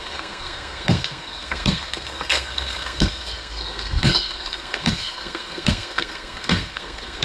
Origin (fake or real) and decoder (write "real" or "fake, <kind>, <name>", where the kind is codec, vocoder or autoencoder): fake, codec, SNAC